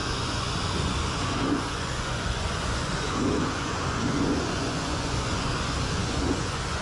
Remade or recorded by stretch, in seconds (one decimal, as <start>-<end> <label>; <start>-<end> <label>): 0.0-6.8 remade